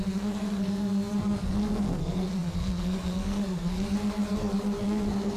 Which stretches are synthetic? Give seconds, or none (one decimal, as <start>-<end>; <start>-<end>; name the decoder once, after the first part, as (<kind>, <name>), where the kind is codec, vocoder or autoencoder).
0.0-5.4 (codec, SNAC)